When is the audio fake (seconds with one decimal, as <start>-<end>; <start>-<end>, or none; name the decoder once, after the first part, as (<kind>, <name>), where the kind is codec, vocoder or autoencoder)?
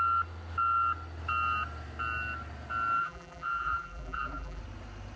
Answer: 3.0-4.6 (vocoder, BigVGAN v2)